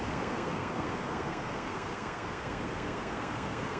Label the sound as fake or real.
fake